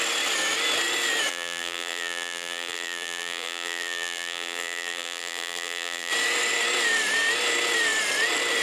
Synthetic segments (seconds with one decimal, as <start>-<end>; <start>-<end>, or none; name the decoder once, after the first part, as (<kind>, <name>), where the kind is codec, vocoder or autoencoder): 1.3-6.1 (vocoder, BigVGAN v2)